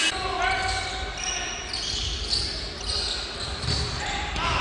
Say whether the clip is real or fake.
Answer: real